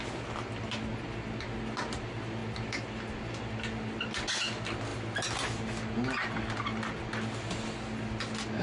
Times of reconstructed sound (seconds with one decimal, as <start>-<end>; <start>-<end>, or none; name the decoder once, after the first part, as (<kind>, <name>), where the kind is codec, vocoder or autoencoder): none